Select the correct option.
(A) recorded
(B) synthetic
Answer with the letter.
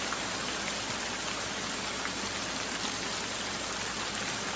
A